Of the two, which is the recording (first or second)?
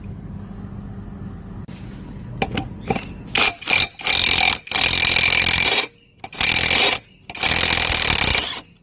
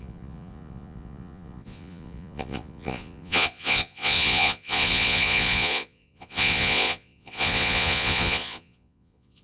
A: first